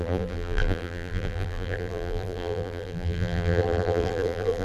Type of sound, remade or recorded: remade